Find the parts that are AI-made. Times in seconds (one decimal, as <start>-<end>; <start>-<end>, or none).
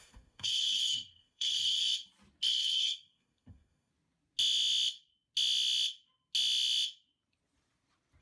0.0-1.8; 2.6-3.9